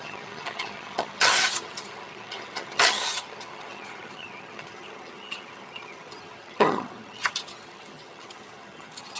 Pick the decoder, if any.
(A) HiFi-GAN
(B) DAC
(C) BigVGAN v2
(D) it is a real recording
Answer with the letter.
A